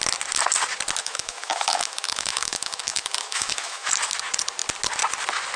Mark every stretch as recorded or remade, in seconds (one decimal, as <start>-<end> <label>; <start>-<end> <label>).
0.0-1.0 recorded; 1.0-3.9 remade; 3.9-5.6 recorded